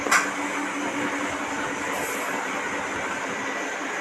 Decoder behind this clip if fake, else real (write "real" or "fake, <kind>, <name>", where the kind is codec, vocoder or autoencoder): real